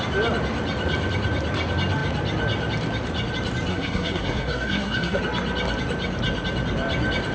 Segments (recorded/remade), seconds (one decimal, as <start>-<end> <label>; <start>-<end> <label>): 0.0-3.7 recorded; 3.7-5.2 remade; 5.2-7.3 recorded